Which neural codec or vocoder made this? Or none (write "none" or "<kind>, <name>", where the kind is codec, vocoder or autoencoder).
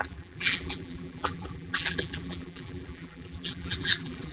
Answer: vocoder, BigVGAN v2